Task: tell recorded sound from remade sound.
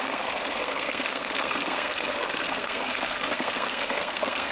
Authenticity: remade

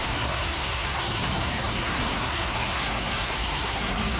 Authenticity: remade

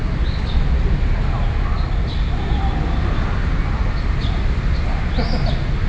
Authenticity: recorded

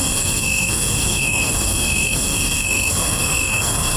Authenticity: remade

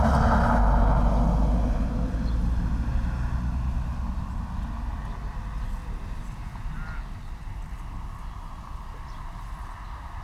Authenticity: recorded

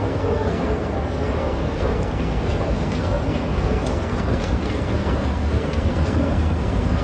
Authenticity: remade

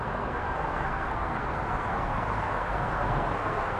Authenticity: remade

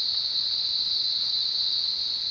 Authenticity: recorded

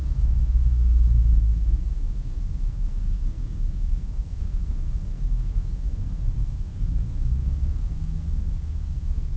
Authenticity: remade